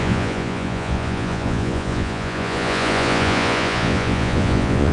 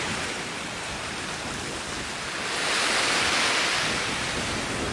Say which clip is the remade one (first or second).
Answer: first